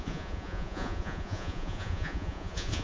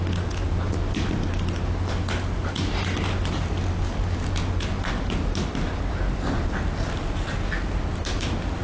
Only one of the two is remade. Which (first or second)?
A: first